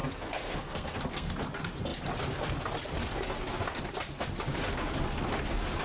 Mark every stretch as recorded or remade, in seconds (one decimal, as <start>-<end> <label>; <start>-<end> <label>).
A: 0.0-1.3 remade; 1.3-5.8 recorded